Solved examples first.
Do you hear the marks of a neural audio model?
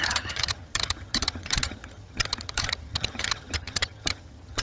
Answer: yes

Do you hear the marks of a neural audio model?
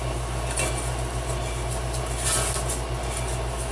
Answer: no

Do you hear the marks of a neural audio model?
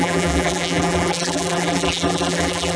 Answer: yes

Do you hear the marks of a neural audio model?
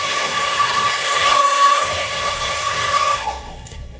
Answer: yes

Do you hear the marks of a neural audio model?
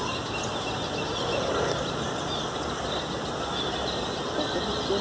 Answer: no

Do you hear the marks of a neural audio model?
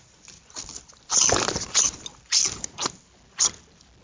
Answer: no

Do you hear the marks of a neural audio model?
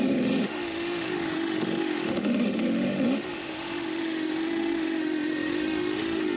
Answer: yes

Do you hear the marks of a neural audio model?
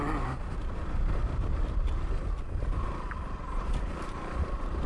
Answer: no